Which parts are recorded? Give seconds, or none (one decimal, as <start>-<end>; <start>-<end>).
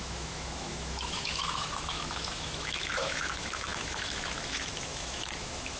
none